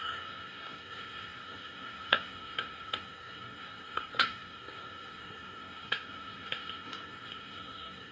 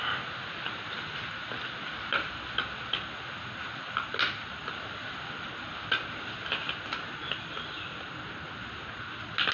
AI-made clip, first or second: first